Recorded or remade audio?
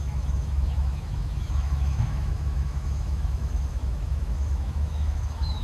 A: remade